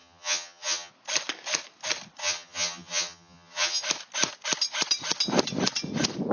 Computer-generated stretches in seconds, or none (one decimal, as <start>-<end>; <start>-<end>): 0.0-0.9; 2.2-3.8